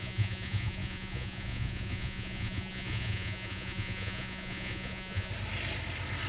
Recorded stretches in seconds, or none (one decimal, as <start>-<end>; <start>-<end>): 5.3-6.3